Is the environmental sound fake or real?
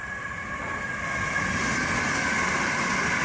real